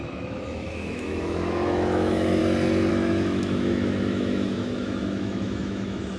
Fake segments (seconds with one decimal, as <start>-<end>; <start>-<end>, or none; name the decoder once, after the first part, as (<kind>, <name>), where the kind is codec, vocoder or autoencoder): 0.0-2.4 (autoencoder, DAC-VAE); 2.9-6.2